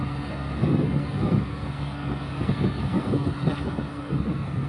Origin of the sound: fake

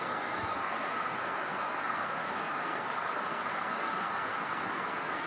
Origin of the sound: fake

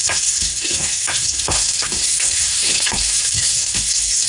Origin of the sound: fake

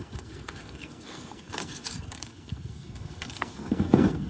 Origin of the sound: fake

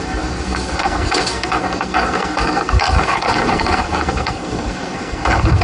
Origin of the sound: fake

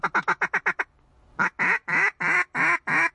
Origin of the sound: real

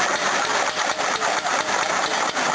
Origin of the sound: real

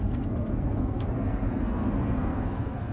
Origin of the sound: fake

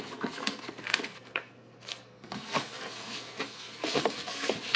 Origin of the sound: fake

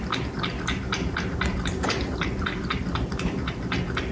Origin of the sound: real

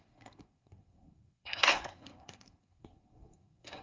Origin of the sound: fake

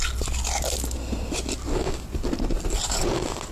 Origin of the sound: real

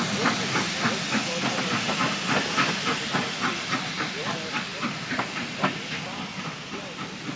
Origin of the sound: real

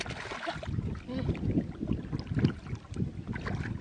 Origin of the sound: real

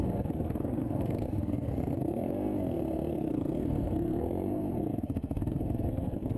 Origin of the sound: fake